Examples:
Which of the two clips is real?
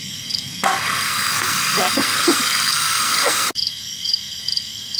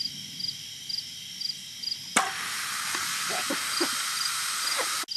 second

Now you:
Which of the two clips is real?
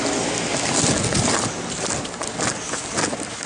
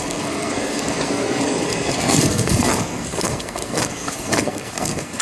first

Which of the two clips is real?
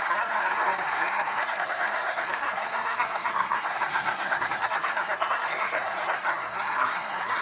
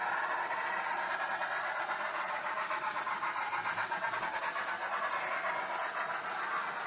second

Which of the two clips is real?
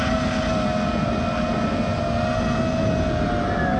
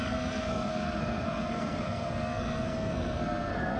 first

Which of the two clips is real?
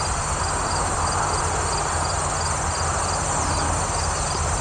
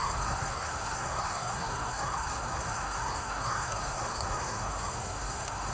first